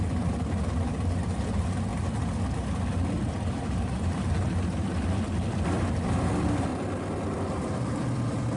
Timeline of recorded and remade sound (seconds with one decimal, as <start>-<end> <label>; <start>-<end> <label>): 0.0-8.6 remade